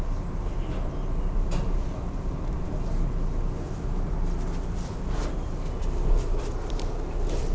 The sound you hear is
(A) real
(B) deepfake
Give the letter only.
A